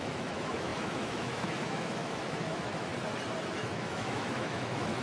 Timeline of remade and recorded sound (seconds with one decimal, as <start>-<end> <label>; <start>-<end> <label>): 0.0-2.9 remade; 2.9-3.5 recorded; 3.5-5.0 remade